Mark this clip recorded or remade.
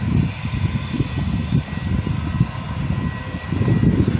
recorded